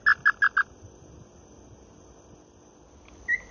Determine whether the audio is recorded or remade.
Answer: recorded